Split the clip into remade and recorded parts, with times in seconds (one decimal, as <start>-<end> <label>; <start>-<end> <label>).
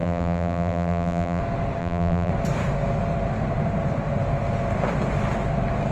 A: 0.0-1.4 remade; 1.4-1.8 recorded; 1.8-2.3 remade; 2.3-5.9 recorded